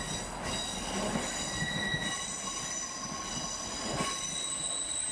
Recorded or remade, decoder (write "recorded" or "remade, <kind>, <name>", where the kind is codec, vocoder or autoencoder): recorded